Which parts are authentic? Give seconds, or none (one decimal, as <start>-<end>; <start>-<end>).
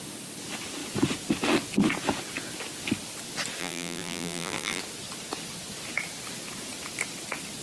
0.0-3.6; 4.8-7.6